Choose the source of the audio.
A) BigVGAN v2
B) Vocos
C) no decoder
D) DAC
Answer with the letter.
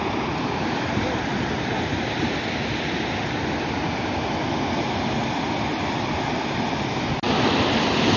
C